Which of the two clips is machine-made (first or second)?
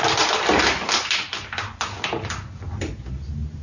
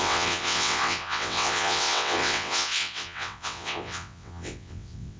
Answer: second